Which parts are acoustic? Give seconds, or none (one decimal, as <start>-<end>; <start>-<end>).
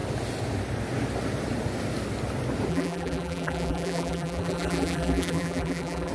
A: 0.0-2.7